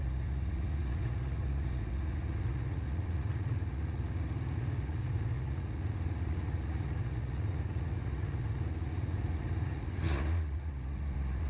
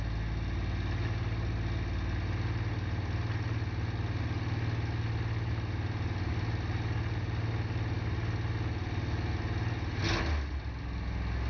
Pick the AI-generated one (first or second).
first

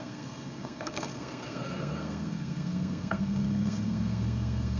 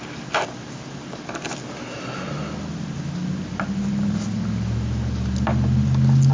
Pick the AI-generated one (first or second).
first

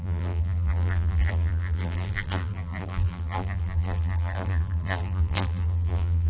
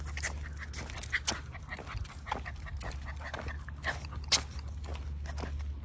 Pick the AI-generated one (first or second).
first